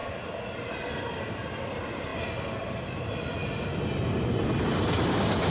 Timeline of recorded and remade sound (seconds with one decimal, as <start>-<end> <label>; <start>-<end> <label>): 0.0-5.5 recorded